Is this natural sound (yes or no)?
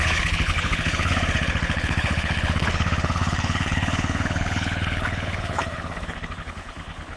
no